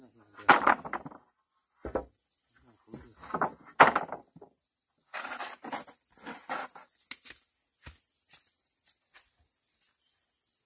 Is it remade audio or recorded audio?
recorded